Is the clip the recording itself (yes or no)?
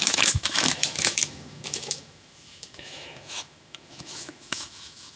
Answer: no